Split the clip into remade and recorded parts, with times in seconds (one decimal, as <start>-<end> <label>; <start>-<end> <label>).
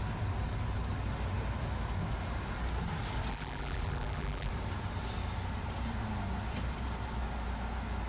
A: 0.0-3.3 recorded; 3.3-4.5 remade; 4.5-8.1 recorded